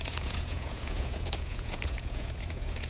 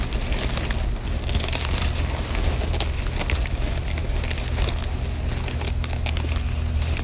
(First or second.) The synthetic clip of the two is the first